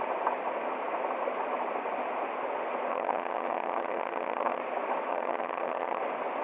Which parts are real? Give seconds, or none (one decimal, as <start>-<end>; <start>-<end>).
0.0-2.9; 4.6-5.1; 6.0-6.4